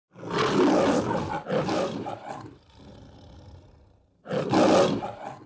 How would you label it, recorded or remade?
recorded